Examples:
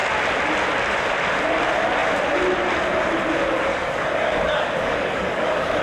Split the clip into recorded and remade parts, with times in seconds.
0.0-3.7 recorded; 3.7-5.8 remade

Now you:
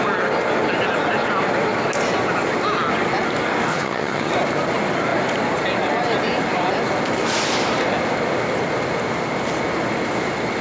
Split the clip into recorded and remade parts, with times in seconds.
0.0-3.7 recorded; 3.7-4.3 remade; 4.3-10.6 recorded

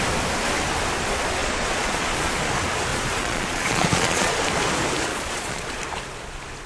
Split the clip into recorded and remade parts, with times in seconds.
0.0-1.4 recorded; 1.4-2.4 remade; 2.4-2.9 recorded; 2.9-4.4 remade; 4.4-5.1 recorded; 5.1-5.8 remade; 5.8-6.7 recorded